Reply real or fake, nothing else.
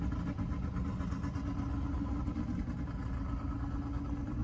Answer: real